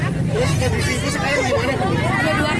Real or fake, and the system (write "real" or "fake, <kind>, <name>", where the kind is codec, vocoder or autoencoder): real